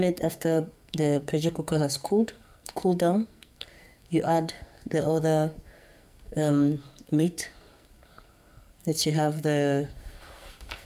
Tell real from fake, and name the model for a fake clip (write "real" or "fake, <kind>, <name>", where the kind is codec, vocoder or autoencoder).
fake, codec, SNAC